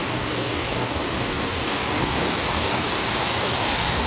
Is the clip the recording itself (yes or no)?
no